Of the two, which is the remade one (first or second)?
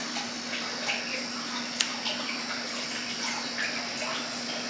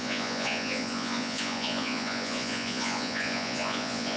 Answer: second